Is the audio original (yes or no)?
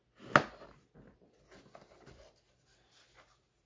yes